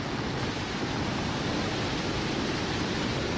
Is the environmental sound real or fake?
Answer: real